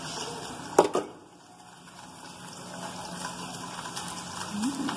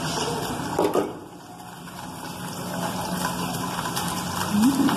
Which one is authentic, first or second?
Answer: first